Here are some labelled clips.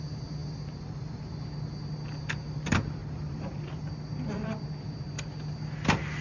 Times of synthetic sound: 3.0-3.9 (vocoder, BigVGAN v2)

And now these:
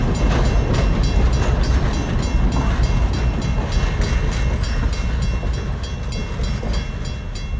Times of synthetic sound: none

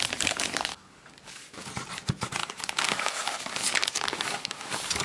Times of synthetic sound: 0.7-1.7 (codec, DAC); 2.4-5.0